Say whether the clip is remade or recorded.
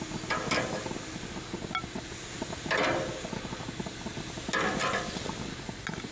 recorded